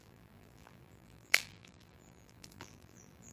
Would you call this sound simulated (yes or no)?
yes